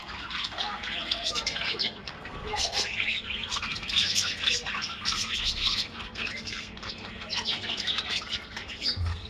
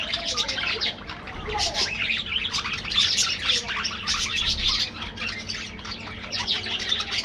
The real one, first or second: second